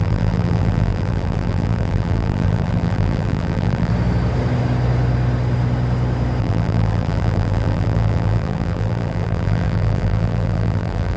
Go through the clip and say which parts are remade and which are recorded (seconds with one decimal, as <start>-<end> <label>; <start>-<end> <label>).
0.0-3.9 remade; 3.9-6.4 recorded; 6.4-11.2 remade